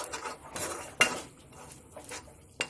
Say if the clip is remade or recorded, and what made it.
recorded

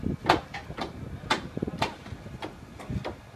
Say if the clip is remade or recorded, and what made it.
recorded